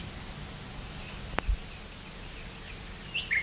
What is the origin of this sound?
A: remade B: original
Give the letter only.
B